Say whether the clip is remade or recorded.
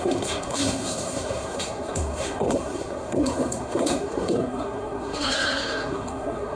remade